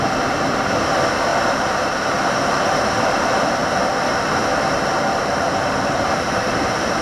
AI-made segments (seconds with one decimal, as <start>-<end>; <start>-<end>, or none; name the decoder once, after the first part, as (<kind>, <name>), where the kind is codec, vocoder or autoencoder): 0.0-3.6 (vocoder, BigVGAN v2); 4.3-7.0